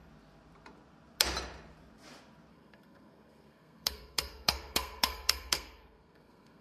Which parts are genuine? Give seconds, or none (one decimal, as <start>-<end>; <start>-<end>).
0.0-2.5